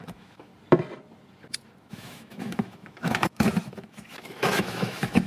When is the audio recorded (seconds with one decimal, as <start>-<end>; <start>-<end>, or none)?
0.5-1.8